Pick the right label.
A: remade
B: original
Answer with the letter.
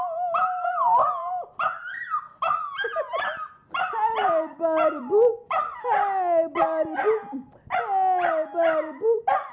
B